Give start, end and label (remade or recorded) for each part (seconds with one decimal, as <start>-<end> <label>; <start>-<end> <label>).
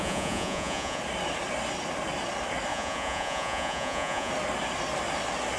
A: 0.0-1.0 remade; 1.0-2.7 recorded; 2.7-4.3 remade; 4.3-5.6 recorded